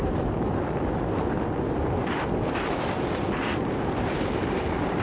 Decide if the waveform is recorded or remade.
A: recorded